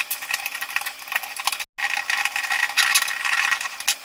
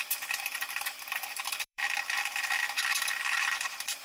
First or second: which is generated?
second